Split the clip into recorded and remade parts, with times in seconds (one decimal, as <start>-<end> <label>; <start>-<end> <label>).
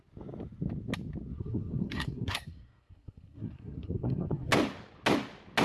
0.0-1.3 recorded; 1.3-4.5 remade; 4.5-5.6 recorded